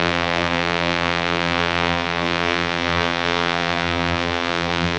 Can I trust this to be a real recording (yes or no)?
no